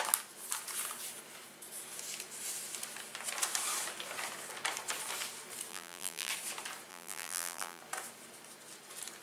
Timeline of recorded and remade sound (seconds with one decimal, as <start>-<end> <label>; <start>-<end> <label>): 0.0-5.7 recorded; 5.7-6.3 remade; 6.3-6.9 recorded; 6.9-7.8 remade; 7.8-9.2 recorded